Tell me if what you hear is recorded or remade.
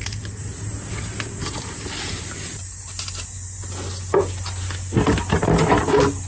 recorded